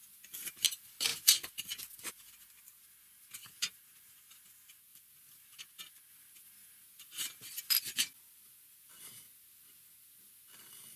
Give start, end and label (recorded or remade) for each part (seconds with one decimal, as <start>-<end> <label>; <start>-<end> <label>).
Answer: 0.0-11.0 recorded